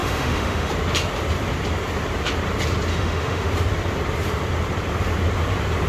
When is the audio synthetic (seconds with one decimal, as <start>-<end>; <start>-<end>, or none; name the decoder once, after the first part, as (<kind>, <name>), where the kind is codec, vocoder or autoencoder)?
0.0-0.7 (autoencoder, DAC-VAE); 2.9-3.5